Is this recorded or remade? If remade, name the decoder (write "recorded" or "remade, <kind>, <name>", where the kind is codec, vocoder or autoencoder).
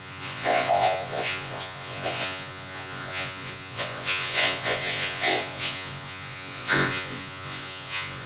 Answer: remade, vocoder, Vocos